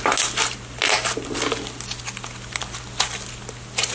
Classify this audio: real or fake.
real